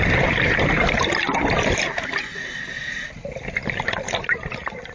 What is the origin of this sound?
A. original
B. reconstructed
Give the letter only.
A